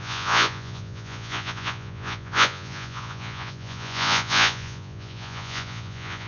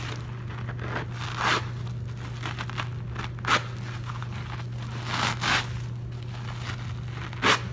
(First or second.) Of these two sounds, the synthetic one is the first